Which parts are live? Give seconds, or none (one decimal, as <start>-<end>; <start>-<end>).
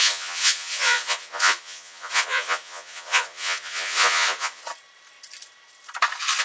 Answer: 4.6-6.4